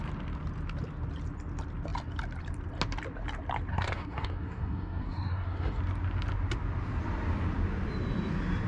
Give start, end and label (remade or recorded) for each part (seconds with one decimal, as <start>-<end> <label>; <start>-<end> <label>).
0.0-3.7 recorded; 3.7-5.8 remade; 5.8-8.7 recorded